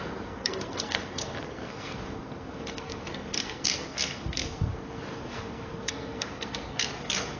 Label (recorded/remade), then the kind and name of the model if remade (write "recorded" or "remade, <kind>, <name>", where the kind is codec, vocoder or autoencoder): remade, codec, SNAC